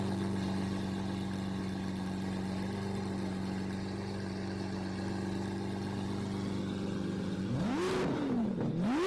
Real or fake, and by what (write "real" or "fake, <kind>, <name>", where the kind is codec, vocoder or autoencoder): real